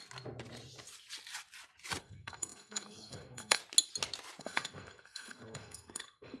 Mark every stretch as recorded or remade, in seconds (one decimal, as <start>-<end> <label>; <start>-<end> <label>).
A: 0.0-2.0 recorded; 2.0-3.6 remade; 3.6-4.4 recorded; 4.4-6.4 remade